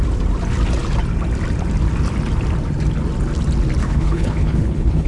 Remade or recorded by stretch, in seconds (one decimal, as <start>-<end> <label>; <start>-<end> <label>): 0.0-3.8 recorded; 3.8-5.1 remade